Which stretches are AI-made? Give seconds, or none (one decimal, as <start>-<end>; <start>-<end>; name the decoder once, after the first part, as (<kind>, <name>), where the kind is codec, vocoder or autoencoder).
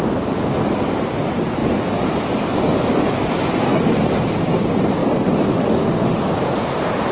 5.5-6.2 (autoencoder, DAC-VAE)